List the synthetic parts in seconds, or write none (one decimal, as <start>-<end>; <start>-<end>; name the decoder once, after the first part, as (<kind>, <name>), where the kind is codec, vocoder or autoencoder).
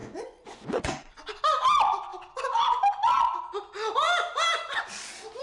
0.0-1.2 (vocoder, Vocos)